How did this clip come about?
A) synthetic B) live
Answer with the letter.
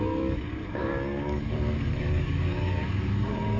A